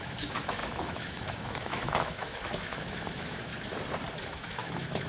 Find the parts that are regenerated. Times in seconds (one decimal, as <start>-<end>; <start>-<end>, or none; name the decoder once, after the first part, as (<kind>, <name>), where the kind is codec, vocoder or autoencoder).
0.0-3.5 (autoencoder, DAC-VAE); 4.2-5.1